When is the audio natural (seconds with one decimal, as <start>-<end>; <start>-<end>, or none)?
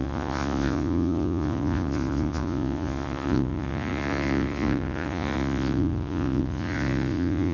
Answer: none